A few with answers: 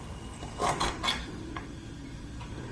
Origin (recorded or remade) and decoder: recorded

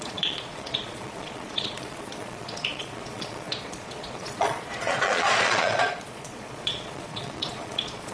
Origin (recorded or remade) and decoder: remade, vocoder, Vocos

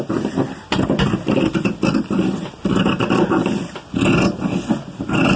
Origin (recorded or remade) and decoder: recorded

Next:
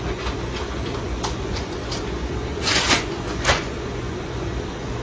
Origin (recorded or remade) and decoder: remade, vocoder, Vocos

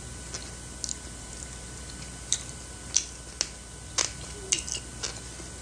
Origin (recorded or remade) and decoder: recorded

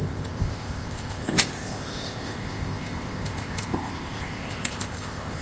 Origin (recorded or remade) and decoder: remade, codec, ZipCodec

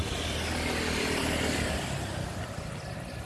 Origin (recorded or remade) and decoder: recorded